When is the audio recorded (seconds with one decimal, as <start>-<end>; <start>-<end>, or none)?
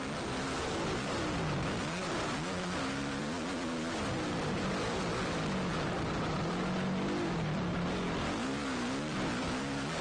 0.0-10.0